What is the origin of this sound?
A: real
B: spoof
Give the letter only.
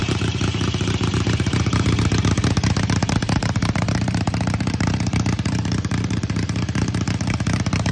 B